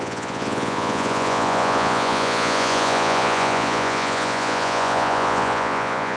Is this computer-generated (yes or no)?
yes